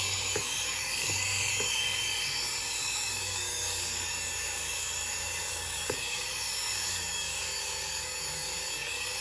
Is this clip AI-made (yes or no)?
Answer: yes